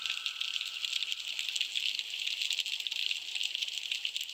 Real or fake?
real